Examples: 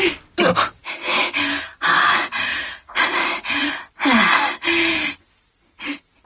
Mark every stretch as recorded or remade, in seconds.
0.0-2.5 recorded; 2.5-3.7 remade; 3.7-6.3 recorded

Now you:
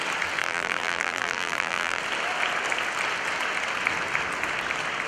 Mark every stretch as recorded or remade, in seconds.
0.0-0.4 recorded; 0.4-2.0 remade; 2.0-5.1 recorded